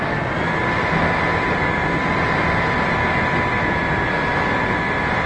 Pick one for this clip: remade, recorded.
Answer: recorded